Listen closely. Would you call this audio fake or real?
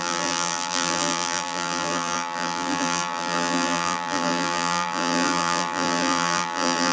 fake